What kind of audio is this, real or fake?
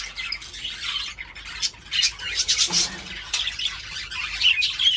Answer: real